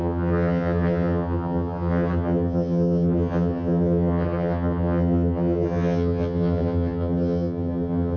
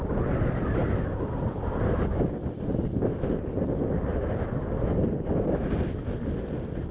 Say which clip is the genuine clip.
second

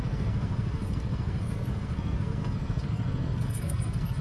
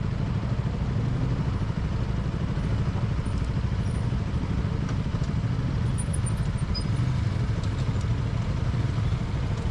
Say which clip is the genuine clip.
second